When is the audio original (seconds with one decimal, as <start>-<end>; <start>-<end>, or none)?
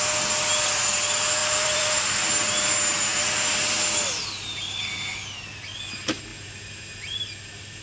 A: 0.0-1.4; 2.2-7.8